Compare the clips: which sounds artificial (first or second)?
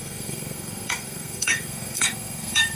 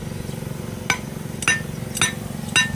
first